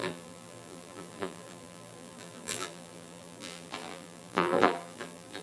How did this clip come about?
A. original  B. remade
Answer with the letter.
B